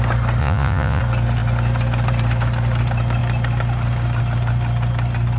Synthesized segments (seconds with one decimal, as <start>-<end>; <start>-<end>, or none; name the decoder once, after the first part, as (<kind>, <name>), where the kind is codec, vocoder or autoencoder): 0.4-1.0 (vocoder, Vocos)